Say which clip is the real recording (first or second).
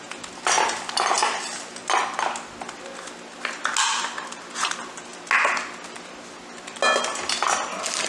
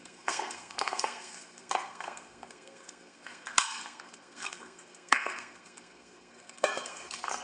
first